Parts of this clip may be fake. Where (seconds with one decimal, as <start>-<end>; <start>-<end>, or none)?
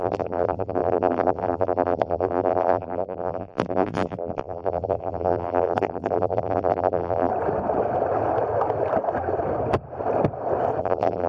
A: 0.0-7.3; 10.8-11.3